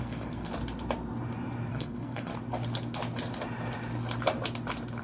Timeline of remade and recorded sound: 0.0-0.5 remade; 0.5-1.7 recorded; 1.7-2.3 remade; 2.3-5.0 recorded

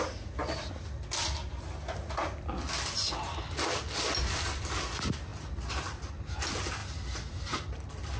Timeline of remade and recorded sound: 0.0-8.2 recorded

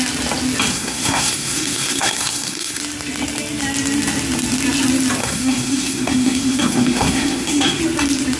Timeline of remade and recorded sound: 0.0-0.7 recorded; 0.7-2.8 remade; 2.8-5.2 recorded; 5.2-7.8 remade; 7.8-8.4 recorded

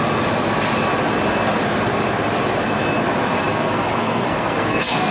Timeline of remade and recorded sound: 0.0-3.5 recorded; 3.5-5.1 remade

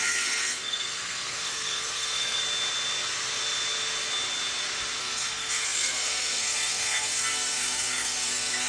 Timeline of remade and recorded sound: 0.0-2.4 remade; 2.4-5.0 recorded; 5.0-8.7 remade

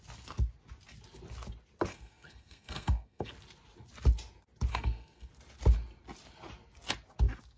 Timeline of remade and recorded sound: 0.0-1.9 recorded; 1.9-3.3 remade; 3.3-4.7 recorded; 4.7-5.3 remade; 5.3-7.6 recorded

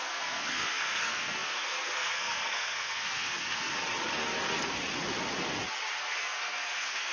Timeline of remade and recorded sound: 0.0-3.7 remade; 3.7-6.0 recorded; 6.0-7.1 remade